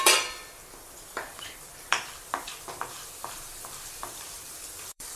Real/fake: fake